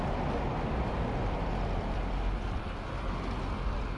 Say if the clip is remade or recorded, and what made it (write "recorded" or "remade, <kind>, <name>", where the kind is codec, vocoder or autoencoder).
recorded